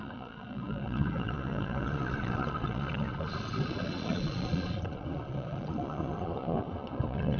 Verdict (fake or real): fake